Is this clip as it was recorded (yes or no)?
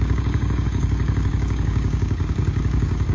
no